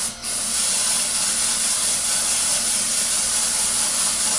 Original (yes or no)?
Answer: yes